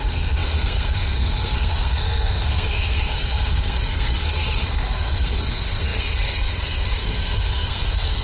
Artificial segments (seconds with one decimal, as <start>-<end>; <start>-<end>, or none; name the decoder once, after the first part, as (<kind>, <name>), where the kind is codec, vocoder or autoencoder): 0.0-8.2 (codec, SNAC)